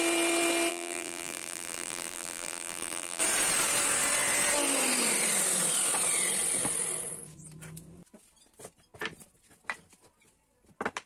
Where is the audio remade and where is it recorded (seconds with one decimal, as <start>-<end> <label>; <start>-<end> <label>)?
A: 0.0-0.7 recorded; 0.7-3.2 remade; 3.2-11.1 recorded